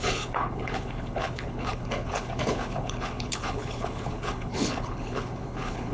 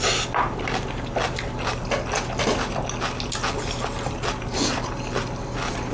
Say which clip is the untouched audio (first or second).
second